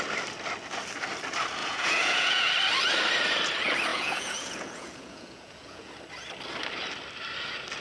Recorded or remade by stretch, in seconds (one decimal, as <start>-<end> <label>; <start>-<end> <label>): 0.0-1.6 recorded; 1.6-2.5 remade; 2.5-3.9 recorded; 3.9-5.9 remade; 5.9-7.8 recorded